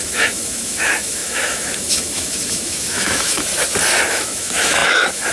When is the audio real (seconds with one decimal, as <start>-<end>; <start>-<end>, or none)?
3.5-4.1